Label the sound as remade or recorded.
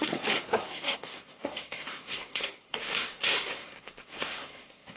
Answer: remade